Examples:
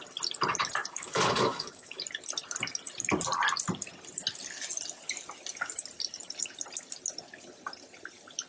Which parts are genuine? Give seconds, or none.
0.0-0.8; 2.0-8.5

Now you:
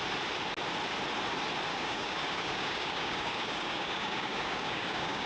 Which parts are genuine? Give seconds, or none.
0.0-1.7

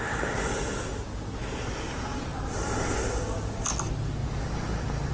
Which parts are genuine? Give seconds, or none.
0.0-5.1

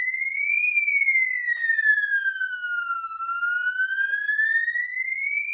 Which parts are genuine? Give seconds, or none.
0.0-5.5